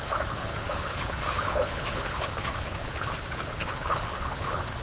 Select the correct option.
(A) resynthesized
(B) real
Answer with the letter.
A